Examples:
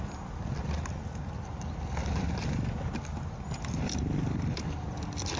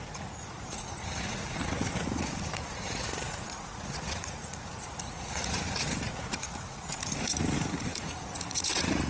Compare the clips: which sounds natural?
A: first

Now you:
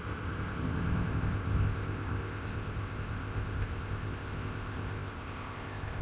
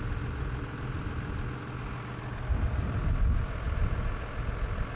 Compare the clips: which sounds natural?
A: second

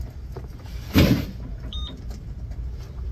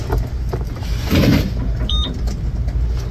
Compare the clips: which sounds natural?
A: second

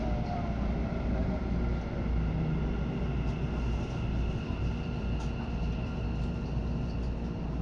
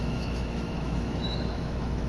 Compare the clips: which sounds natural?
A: first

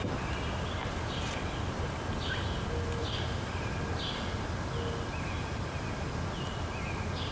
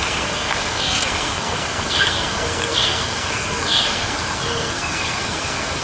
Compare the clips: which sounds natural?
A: first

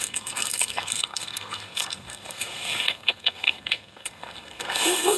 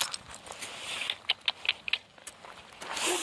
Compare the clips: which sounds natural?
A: second